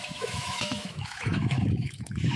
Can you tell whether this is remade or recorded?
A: remade